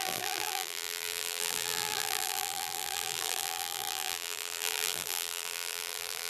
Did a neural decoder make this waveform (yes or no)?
yes